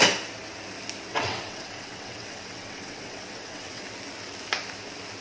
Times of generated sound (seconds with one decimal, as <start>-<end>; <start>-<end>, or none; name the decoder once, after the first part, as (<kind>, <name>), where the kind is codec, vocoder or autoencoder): 1.1-3.8 (vocoder, WaveNeXt)